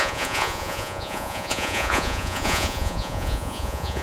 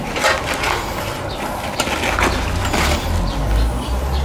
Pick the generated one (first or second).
first